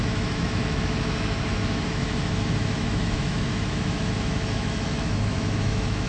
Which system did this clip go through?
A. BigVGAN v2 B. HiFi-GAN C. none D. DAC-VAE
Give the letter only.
D